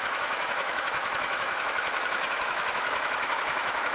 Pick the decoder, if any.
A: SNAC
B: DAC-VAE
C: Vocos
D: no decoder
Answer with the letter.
B